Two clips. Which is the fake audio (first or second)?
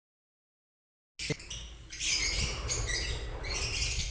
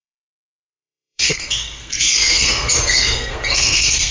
second